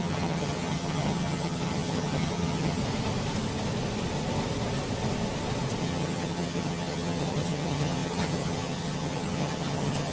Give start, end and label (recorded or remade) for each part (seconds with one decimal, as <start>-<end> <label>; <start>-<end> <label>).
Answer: 0.0-2.8 remade; 2.8-5.8 recorded; 5.8-10.1 remade

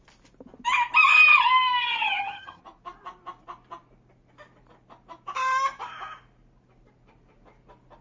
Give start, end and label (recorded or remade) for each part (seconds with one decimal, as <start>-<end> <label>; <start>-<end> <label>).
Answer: 0.0-1.8 recorded; 1.8-2.6 remade; 2.6-8.0 recorded

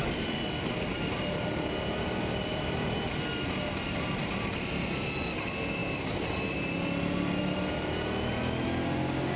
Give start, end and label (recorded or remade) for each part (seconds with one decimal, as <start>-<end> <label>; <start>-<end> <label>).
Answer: 0.0-9.4 recorded

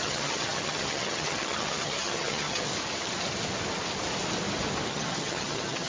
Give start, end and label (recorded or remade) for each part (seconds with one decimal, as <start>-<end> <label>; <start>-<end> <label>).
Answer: 0.0-2.7 remade; 2.7-4.9 recorded; 4.9-5.9 remade

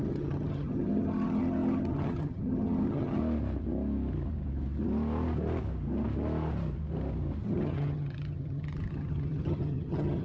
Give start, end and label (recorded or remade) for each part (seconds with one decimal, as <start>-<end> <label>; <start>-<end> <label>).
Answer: 0.0-3.2 remade; 3.2-7.4 recorded; 7.4-10.2 remade

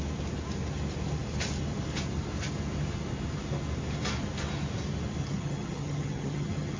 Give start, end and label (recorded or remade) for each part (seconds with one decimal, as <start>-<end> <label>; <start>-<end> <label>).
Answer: 0.0-5.2 recorded; 5.2-6.8 remade

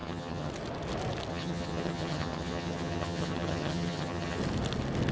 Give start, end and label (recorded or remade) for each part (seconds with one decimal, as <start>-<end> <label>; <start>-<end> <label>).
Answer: 0.0-0.5 remade; 0.5-1.3 recorded; 1.3-4.4 remade; 4.4-5.1 recorded

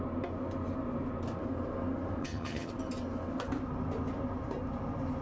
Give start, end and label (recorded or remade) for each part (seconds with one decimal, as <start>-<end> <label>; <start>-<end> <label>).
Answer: 0.0-2.2 recorded; 2.2-2.7 remade; 2.7-5.2 recorded